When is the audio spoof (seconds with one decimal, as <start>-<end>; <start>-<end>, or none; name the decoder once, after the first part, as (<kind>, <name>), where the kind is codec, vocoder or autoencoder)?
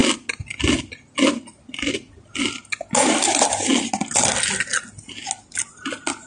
none